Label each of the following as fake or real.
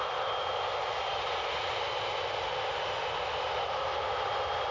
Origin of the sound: real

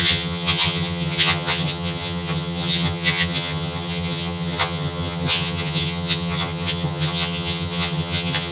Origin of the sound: fake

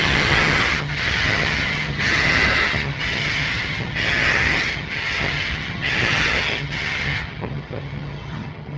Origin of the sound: fake